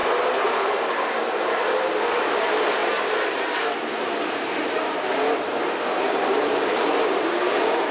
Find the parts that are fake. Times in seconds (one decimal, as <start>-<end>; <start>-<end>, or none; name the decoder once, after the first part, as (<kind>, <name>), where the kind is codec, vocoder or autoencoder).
0.5-2.8 (vocoder, BigVGAN v2); 3.9-7.9